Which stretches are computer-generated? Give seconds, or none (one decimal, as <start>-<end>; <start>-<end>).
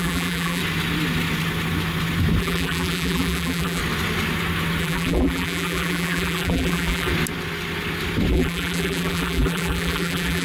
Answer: 0.0-0.6; 2.4-3.8; 4.8-7.1; 8.3-10.4